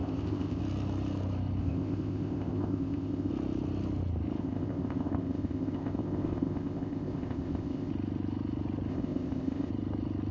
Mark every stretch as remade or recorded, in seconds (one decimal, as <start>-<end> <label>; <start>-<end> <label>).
0.0-0.6 remade; 0.6-1.6 recorded; 1.6-3.3 remade; 3.3-4.4 recorded; 4.4-7.9 remade; 7.9-8.9 recorded; 8.9-9.7 remade; 9.7-10.3 recorded